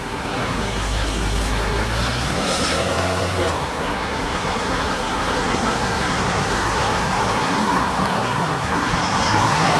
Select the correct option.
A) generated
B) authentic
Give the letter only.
A